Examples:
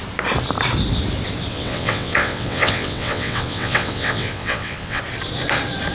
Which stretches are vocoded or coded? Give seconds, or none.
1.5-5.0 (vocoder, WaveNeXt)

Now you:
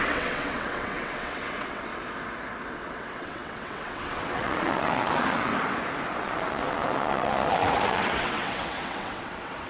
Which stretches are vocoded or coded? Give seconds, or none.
0.0-1.9 (vocoder, WaveNeXt); 2.7-5.5; 6.2-9.7

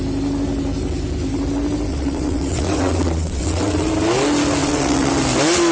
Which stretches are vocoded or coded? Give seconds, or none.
1.9-3.9 (vocoder, WaveNeXt); 4.6-5.1

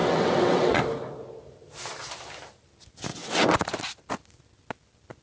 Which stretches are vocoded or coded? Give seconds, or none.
0.0-0.8 (vocoder, WaveNeXt); 3.1-3.6

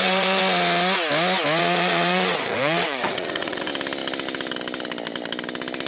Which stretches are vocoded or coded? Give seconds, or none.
0.0-0.4 (vocoder, WaveNeXt); 1.6-3.7

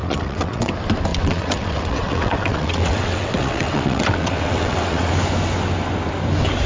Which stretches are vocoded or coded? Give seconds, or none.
0.0-0.7 (vocoder, WaveNeXt); 1.1-5.1

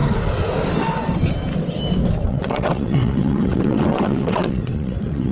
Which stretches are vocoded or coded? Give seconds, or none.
2.2-5.3 (vocoder, WaveNeXt)

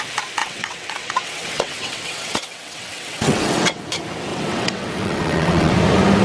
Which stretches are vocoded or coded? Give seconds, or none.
0.4-3.8 (vocoder, WaveNeXt); 4.3-5.7